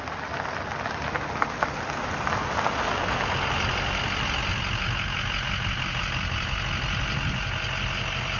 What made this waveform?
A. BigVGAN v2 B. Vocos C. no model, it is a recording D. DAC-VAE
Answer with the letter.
C